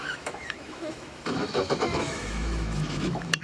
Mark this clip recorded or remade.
remade